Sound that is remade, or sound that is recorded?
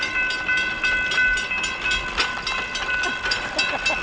recorded